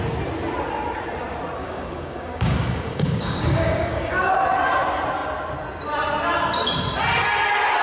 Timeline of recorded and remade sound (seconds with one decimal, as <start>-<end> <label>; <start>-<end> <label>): 0.0-1.6 recorded; 1.6-4.3 remade; 4.3-7.8 recorded